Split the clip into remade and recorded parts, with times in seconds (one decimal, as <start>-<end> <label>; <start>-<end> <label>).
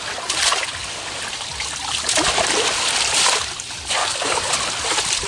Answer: 0.0-4.0 recorded; 4.0-4.5 remade; 4.5-5.3 recorded